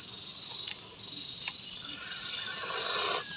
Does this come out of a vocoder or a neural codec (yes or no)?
no